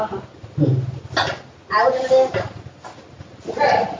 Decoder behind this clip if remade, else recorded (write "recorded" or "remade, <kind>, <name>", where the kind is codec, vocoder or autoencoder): recorded